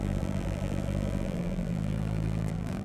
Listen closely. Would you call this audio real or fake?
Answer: fake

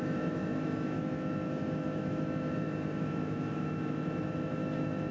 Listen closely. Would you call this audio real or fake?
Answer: fake